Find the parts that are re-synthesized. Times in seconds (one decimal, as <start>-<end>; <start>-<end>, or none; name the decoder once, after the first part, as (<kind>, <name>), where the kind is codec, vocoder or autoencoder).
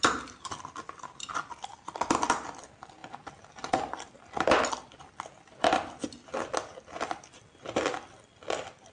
none